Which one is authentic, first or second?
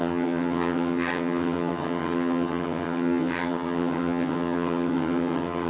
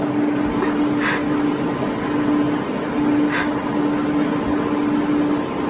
second